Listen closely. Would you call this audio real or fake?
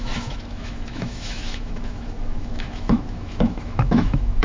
fake